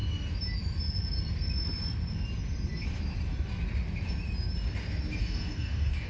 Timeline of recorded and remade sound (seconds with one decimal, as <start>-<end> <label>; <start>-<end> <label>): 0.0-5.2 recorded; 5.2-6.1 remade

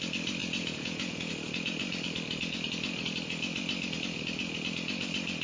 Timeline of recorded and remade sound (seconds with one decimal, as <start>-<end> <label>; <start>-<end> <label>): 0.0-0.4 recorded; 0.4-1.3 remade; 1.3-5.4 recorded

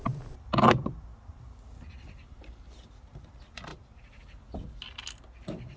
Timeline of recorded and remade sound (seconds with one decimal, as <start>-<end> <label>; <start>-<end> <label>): 0.0-5.8 recorded

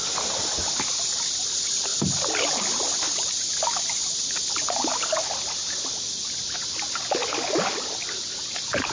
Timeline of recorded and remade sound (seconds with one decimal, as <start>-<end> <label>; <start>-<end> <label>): 0.0-8.9 recorded